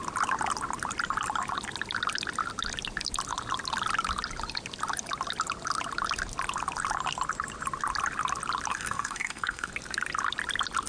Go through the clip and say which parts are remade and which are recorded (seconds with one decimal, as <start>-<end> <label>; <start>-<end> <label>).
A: 0.0-8.7 recorded; 8.7-9.7 remade; 9.7-10.9 recorded